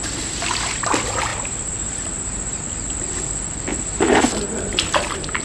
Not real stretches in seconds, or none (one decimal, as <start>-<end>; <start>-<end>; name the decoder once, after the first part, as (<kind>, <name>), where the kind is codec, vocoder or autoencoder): 1.3-2.6 (vocoder, BigVGAN v2); 3.7-4.8